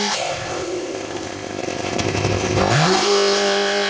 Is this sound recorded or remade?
remade